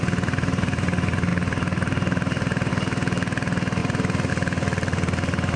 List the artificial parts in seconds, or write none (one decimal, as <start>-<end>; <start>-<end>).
none